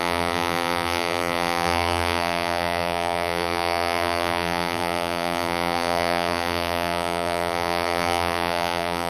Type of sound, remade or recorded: remade